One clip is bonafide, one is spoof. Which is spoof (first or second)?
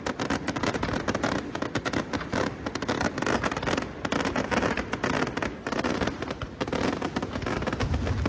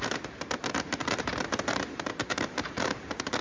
second